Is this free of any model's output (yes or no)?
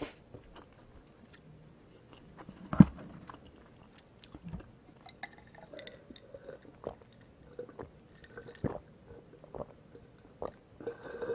yes